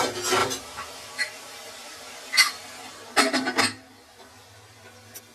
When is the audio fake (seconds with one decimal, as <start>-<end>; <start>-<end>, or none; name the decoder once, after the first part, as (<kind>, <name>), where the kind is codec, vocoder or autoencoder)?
0.4-3.6 (vocoder, BigVGAN v2)